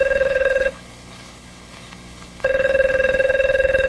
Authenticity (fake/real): fake